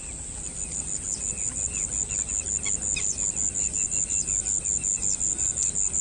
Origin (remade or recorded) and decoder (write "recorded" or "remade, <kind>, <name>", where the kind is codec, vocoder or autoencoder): recorded